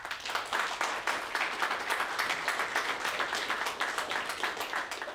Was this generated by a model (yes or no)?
no